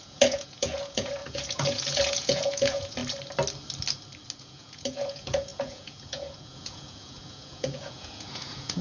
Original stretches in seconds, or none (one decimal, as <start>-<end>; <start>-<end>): 3.0-4.4